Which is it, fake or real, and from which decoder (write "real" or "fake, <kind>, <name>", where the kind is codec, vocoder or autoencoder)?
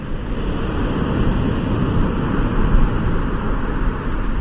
real